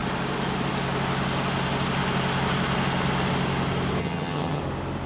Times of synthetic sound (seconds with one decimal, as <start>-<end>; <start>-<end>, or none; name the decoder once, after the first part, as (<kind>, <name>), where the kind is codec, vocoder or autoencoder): 4.0-4.6 (vocoder, HiFi-GAN)